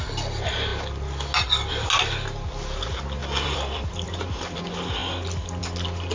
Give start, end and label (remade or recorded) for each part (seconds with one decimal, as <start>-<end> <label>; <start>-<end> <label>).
0.0-3.2 recorded; 3.2-4.6 remade; 4.6-6.1 recorded